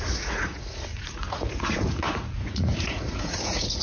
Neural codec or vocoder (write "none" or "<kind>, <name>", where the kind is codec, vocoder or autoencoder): vocoder, Vocos